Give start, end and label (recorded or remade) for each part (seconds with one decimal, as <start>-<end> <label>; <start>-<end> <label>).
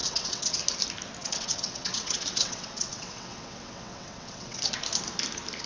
0.0-0.6 remade; 0.6-1.2 recorded; 1.2-4.6 remade; 4.6-5.7 recorded